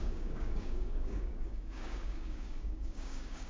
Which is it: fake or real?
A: fake